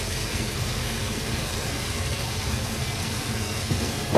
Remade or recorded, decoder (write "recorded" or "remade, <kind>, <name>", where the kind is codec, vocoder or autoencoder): remade, codec, SNAC